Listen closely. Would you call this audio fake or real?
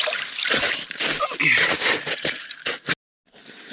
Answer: real